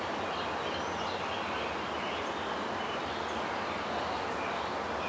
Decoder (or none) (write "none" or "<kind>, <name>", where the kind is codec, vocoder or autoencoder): none